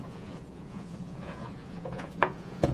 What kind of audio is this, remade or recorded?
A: remade